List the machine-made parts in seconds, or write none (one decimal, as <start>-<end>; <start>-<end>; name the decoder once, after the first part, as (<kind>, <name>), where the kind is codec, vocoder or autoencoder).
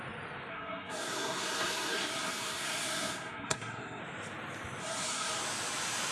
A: 0.5-4.0 (codec, SNAC); 4.8-5.4